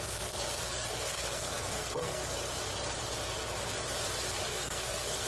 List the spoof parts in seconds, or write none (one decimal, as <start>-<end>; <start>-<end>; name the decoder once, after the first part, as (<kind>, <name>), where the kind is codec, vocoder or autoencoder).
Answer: 0.0-2.2 (codec, SNAC); 4.3-5.3